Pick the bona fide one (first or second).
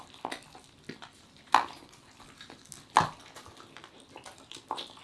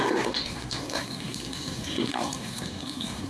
first